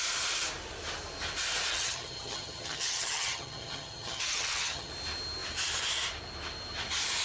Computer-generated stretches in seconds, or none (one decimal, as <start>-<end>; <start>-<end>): 1.7-4.9